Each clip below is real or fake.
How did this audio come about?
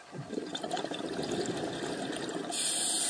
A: real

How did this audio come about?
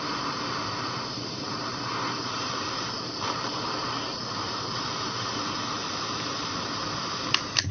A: fake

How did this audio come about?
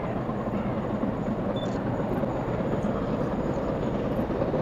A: real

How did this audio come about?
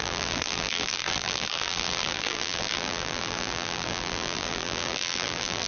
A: fake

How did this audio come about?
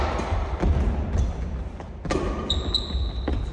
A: real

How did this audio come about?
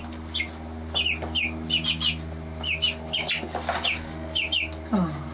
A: real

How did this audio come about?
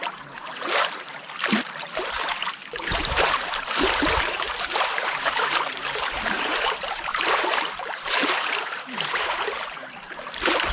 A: fake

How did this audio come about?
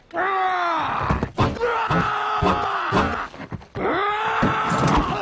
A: real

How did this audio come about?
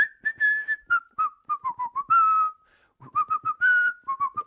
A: fake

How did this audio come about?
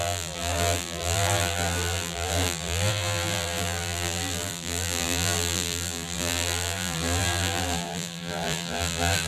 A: fake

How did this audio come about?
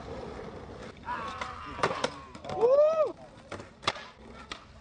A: fake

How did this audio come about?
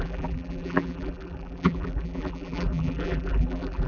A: fake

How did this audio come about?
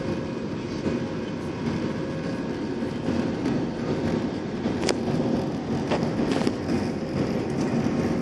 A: real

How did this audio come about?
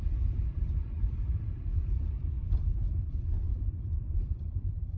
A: fake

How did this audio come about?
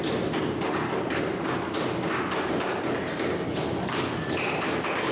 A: real